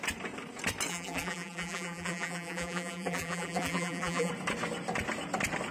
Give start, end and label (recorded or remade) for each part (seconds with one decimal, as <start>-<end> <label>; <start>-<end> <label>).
0.0-0.9 recorded; 0.9-4.3 remade; 4.3-5.7 recorded